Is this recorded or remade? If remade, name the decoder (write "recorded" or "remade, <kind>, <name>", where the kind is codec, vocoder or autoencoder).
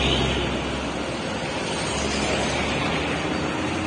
recorded